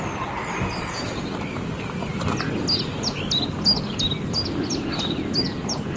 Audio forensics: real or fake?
real